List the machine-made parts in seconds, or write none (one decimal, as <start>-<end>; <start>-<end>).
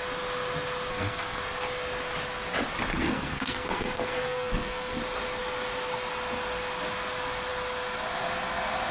0.9-1.4; 2.9-5.0